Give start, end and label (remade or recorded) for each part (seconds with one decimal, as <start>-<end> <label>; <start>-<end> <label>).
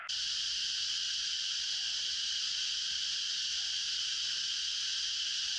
0.0-5.6 recorded